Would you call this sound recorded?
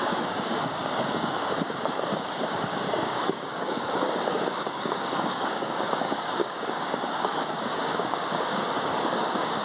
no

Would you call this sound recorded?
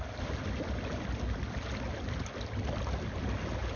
yes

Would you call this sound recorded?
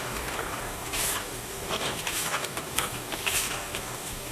no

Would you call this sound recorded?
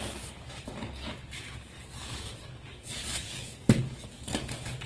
no